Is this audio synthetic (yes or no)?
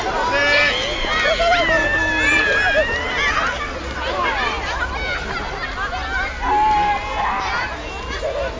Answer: no